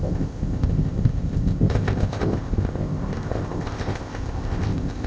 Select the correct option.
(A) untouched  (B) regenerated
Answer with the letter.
B